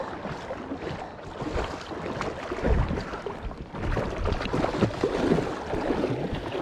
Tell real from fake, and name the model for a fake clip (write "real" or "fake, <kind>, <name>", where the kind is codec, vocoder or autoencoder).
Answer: real